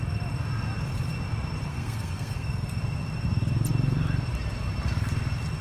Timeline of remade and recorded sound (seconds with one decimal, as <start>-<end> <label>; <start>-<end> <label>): 0.0-1.7 recorded; 1.7-2.8 remade; 2.8-5.6 recorded